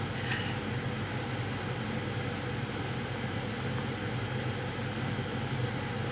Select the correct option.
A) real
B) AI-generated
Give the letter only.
A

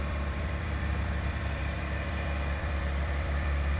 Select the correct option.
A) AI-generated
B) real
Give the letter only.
A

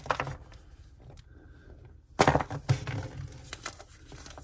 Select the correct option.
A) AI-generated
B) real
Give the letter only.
B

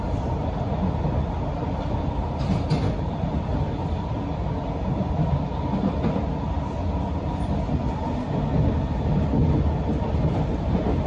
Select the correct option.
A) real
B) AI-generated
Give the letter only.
A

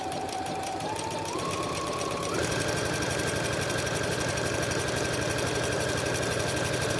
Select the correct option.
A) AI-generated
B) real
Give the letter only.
A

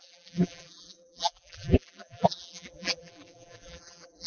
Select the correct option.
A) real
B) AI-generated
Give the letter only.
B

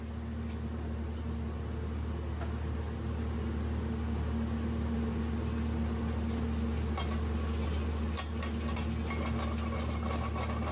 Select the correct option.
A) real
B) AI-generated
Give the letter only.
A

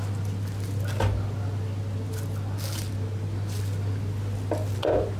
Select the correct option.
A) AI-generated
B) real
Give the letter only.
B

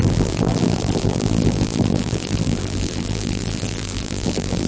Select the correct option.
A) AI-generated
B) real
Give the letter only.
A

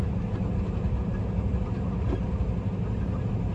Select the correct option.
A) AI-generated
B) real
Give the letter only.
B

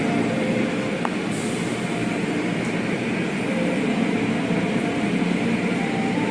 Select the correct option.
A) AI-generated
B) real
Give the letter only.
A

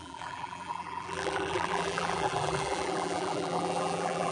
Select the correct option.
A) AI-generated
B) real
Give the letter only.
A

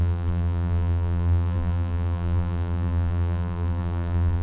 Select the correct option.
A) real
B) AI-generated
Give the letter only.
B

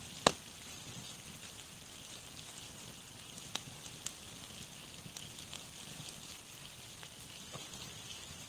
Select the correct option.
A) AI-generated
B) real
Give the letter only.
B